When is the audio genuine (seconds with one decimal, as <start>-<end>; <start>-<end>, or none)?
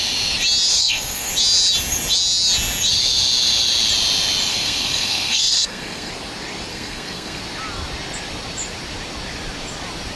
0.0-0.7; 1.3-4.5; 6.1-6.7; 7.4-10.2